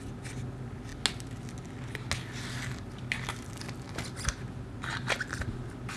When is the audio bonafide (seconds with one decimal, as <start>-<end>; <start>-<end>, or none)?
0.0-6.0